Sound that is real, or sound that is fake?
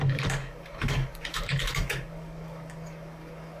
fake